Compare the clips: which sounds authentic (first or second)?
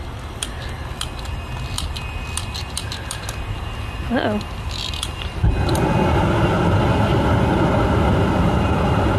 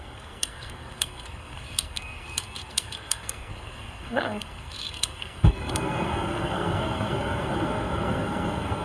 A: first